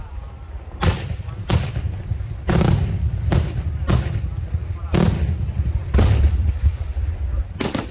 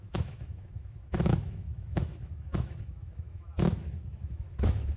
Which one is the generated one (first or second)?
second